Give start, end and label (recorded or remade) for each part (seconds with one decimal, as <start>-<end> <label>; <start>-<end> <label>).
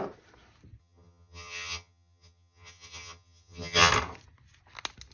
0.0-0.8 recorded; 0.8-3.9 remade; 3.9-5.1 recorded